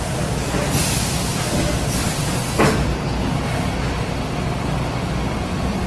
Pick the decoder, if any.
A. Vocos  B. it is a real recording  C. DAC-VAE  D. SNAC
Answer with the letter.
B